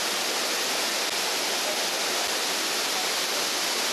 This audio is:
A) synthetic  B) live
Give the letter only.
B